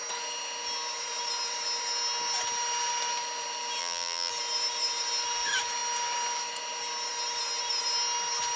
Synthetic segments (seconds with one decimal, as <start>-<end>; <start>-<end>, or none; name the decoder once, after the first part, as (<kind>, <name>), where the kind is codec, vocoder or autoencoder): 3.8-4.3 (vocoder, BigVGAN v2)